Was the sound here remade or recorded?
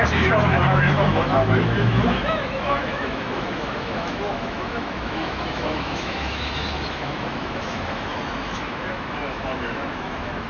remade